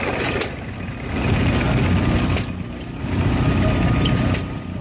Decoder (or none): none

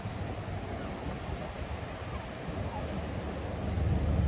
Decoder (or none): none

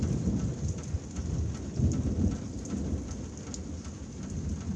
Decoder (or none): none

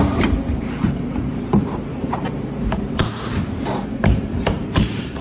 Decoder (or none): vocoder, BigVGAN v2